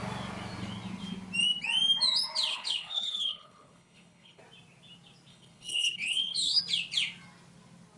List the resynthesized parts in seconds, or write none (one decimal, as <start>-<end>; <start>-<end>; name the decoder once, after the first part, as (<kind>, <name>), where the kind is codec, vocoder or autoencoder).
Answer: 2.5-4.4 (codec, HILCodec); 5.3-6.6